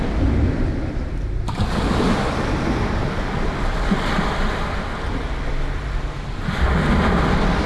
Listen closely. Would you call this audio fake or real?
real